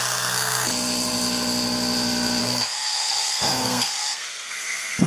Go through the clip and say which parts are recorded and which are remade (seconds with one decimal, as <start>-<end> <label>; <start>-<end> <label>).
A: 0.0-0.7 remade; 0.7-2.4 recorded; 2.4-5.1 remade